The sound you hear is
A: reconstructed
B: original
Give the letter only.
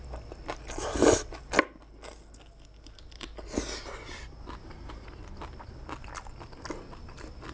B